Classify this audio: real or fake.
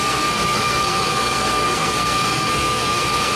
fake